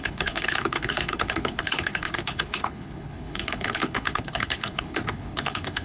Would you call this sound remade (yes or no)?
yes